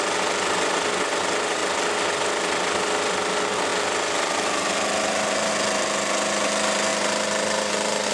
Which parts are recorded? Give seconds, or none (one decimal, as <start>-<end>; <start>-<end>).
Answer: 0.0-3.7; 5.5-8.1